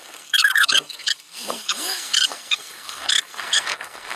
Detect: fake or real fake